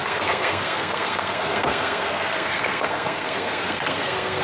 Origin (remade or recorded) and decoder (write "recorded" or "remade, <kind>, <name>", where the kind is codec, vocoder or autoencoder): remade, codec, SNAC